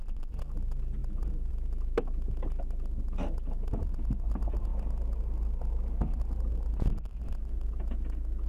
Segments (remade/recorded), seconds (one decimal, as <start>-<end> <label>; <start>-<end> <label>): 0.0-8.5 recorded